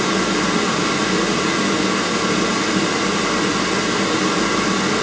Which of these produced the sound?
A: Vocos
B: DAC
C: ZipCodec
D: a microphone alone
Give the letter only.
D